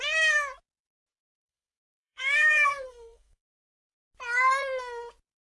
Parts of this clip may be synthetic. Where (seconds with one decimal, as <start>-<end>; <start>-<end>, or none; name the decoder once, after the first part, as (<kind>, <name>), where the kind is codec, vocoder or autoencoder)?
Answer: 1.2-3.7 (codec, SNAC)